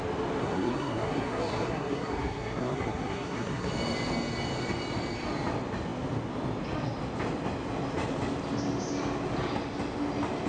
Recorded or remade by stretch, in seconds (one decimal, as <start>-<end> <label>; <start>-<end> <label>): 0.0-0.4 recorded; 0.4-3.7 remade; 3.7-10.5 recorded